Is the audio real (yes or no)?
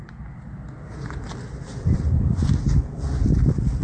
yes